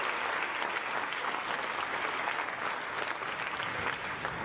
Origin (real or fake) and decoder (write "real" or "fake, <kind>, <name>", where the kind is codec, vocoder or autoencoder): real